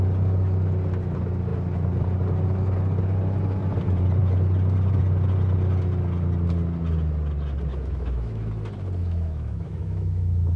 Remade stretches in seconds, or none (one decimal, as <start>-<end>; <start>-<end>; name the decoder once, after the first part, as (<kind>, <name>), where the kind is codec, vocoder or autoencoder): 7.7-8.5 (autoencoder, DAC-VAE); 9.0-10.6

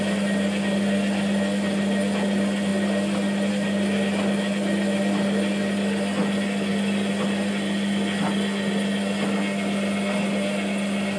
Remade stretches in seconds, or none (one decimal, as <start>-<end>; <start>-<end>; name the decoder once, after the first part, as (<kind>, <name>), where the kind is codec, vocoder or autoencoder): none

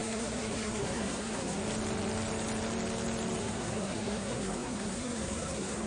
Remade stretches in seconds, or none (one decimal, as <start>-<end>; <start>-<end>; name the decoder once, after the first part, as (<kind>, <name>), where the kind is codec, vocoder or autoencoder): 0.0-1.6 (codec, SNAC); 3.4-5.9

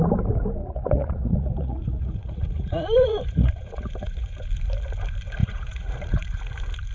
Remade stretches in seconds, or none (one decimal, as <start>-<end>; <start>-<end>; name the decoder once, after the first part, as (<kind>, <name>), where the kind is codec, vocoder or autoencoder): 0.6-4.5 (vocoder, Vocos); 5.4-6.4

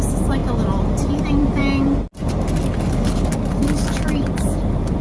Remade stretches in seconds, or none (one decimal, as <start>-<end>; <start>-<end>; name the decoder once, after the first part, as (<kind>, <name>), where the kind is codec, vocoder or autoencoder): none

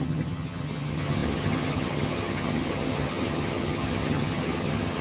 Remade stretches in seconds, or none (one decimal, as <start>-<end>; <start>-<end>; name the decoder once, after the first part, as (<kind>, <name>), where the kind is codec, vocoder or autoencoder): 0.0-5.0 (vocoder, HiFi-GAN)

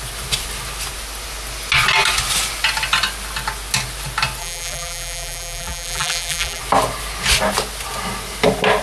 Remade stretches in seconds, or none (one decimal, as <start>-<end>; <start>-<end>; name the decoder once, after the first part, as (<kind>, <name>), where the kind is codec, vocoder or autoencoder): 4.4-6.6 (vocoder, BigVGAN v2)

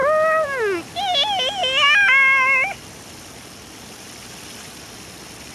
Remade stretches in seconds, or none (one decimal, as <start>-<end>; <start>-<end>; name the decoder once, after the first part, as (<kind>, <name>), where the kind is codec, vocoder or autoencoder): none